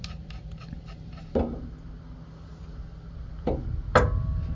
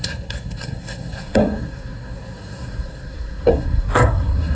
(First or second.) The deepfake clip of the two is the second